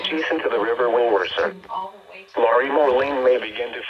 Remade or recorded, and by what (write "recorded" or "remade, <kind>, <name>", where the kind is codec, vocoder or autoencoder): recorded